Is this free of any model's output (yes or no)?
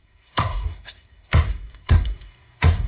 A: no